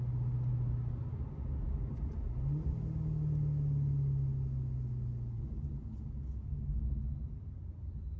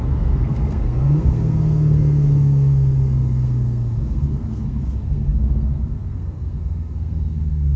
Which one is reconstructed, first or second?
second